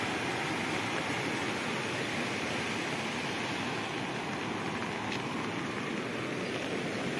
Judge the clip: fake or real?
real